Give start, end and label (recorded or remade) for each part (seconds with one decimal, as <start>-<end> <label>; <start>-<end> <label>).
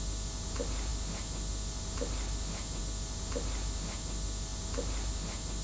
0.0-5.6 recorded